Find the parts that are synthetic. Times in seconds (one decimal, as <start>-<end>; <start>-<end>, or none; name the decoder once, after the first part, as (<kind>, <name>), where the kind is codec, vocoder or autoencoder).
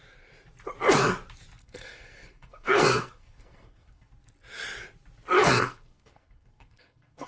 1.6-4.1 (codec, SNAC); 5.4-7.3